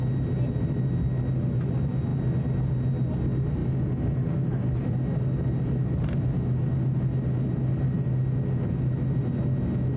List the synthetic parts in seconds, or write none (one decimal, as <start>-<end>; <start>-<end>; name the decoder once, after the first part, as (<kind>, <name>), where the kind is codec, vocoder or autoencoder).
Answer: none